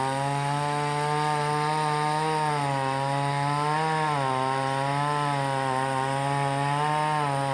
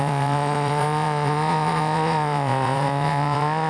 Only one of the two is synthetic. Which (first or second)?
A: second